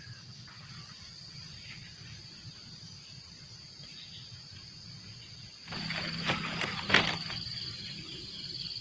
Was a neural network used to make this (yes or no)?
no